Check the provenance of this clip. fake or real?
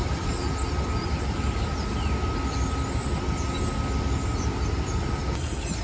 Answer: real